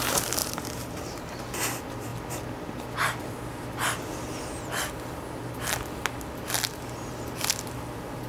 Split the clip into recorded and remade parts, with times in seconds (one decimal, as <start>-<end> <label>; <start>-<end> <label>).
0.0-0.4 recorded; 0.4-1.4 remade; 1.4-8.3 recorded